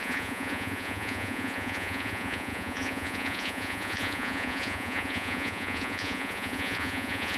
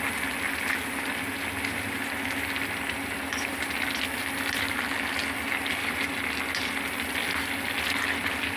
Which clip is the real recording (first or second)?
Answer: second